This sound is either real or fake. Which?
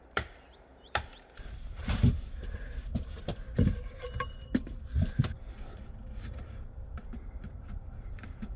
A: fake